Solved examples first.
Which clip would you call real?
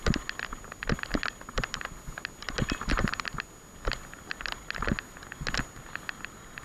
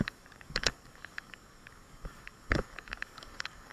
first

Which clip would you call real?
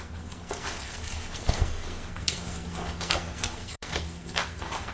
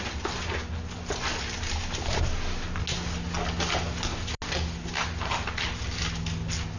second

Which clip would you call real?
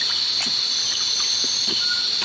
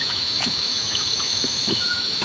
first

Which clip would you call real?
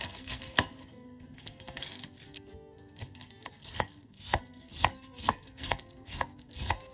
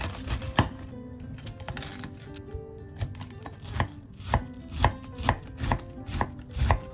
second